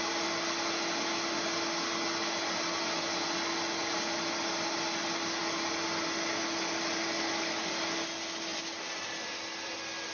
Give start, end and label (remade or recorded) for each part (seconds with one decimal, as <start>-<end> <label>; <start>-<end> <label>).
0.0-10.1 recorded